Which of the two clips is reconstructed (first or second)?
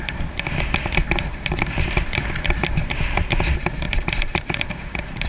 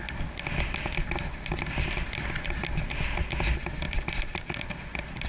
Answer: first